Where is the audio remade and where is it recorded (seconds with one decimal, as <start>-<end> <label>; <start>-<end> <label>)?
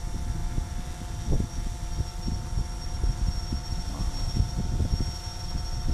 0.0-5.9 recorded